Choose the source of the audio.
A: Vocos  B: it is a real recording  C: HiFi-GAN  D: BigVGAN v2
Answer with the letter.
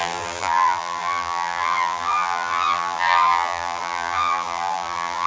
D